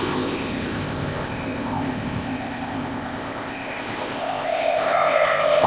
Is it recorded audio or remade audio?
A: remade